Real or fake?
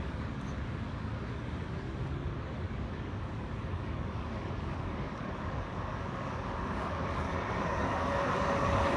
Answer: fake